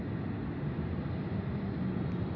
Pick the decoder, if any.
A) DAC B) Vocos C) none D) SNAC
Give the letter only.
C